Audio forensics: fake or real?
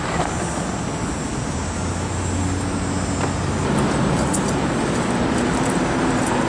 real